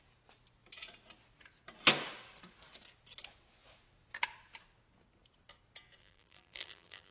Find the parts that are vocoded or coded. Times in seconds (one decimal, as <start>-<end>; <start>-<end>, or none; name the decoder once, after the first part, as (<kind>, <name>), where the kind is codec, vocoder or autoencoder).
6.0-7.1 (vocoder, BigVGAN v2)